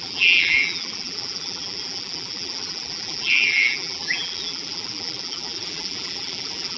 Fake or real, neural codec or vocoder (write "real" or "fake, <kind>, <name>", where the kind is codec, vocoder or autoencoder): fake, vocoder, BigVGAN v2